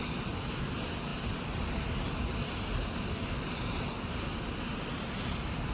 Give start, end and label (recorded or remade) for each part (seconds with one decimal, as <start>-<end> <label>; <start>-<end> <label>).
0.0-5.7 recorded

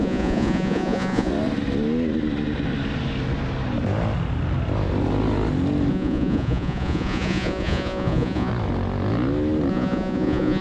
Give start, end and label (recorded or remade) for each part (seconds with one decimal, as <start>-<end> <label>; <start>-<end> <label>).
0.0-1.3 remade; 1.3-5.9 recorded; 5.9-8.5 remade; 8.5-9.7 recorded; 9.7-10.6 remade